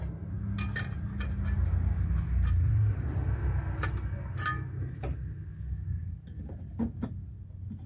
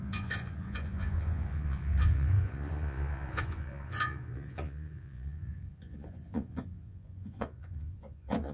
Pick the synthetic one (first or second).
second